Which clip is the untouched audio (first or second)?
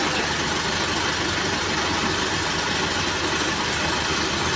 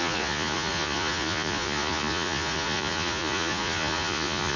first